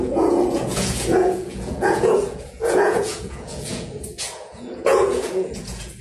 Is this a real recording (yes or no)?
no